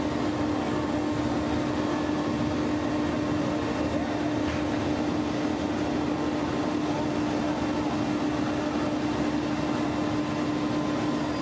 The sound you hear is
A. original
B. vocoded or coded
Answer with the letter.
A